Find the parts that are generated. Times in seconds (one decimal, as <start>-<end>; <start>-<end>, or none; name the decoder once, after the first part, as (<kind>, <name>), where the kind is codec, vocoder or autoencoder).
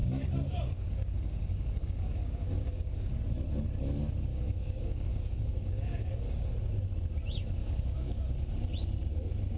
0.0-3.1 (codec, DAC); 4.3-6.5; 7.6-8.3